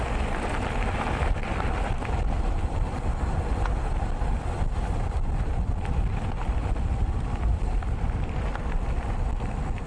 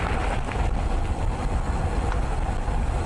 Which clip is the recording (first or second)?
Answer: second